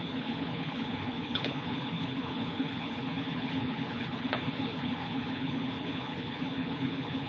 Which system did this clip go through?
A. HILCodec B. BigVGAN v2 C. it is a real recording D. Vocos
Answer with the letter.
A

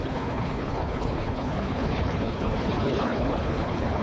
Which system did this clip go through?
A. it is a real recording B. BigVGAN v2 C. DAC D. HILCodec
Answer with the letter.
D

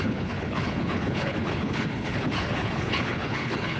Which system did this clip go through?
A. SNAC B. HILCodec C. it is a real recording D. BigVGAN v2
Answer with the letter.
B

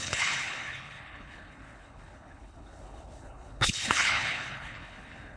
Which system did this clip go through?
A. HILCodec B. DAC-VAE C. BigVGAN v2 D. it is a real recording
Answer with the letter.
A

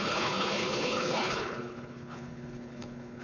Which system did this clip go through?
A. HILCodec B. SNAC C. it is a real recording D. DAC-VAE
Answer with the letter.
A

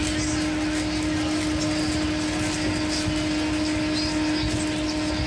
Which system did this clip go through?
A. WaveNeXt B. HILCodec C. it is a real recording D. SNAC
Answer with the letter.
C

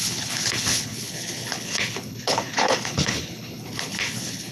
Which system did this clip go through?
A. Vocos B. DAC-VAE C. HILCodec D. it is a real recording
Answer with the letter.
C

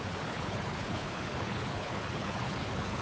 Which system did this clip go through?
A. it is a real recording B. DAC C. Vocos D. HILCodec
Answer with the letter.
D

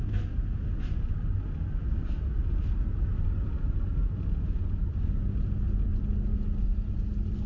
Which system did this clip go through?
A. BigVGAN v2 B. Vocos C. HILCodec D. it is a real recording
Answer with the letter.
D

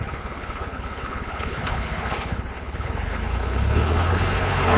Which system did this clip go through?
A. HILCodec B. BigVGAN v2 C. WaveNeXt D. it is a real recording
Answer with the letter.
A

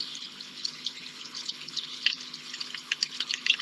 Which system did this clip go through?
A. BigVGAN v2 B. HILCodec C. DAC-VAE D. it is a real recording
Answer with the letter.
B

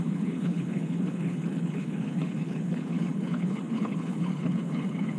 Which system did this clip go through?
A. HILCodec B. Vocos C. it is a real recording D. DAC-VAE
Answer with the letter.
A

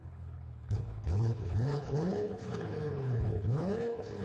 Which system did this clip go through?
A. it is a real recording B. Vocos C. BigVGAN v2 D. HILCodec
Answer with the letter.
D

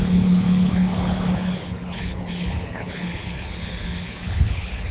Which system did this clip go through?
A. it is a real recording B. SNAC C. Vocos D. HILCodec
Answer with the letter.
D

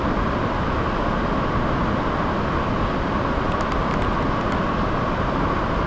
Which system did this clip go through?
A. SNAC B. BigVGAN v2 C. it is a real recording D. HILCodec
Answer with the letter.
C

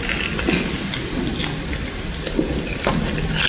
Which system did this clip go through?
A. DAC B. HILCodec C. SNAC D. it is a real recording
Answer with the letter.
D